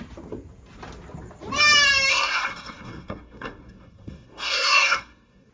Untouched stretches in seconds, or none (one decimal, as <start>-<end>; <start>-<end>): 0.0-2.1